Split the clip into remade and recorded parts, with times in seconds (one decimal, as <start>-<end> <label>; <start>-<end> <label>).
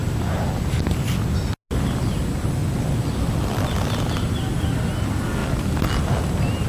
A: 0.0-6.7 recorded